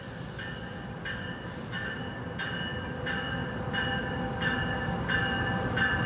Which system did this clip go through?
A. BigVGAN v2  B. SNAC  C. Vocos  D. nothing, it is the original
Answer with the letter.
D